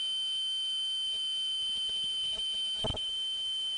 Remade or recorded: recorded